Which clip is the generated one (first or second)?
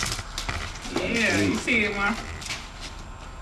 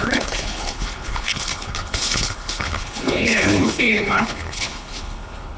second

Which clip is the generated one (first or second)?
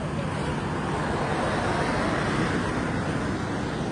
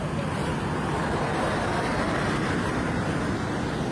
second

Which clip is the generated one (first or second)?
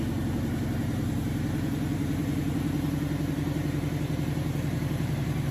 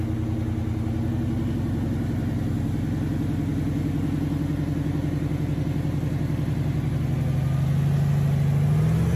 first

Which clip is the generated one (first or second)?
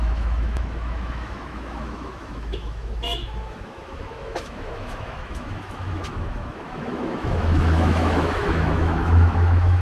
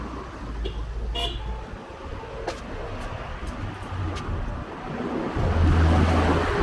first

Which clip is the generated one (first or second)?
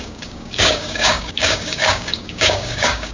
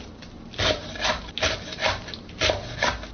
first